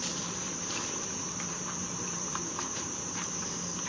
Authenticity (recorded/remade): remade